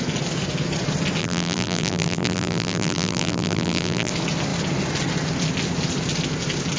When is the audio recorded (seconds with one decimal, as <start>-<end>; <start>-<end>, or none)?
0.0-1.2; 4.1-6.8